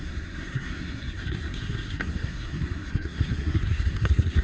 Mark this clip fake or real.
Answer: fake